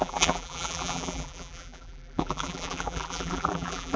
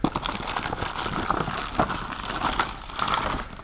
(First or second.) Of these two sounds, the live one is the second